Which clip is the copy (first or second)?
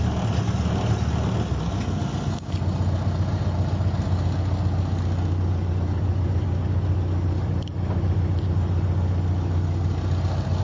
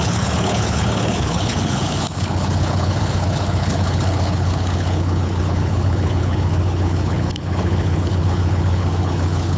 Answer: second